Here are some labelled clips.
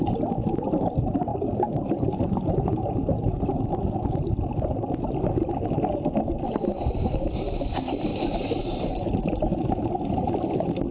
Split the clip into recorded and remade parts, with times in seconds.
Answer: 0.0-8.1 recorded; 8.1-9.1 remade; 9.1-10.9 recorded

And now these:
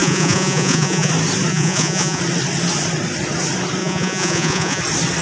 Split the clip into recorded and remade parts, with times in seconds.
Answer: 0.0-1.1 remade; 1.1-1.5 recorded; 1.5-2.2 remade; 2.2-3.8 recorded; 3.8-4.8 remade; 4.8-5.2 recorded

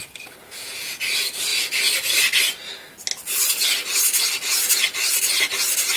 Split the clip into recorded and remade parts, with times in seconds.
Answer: 0.0-0.4 recorded; 0.4-1.0 remade; 1.0-6.0 recorded

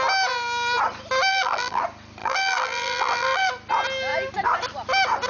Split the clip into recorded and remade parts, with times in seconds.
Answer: 0.0-1.3 recorded; 1.3-1.8 remade; 1.8-2.2 recorded; 2.2-3.5 remade; 3.5-5.3 recorded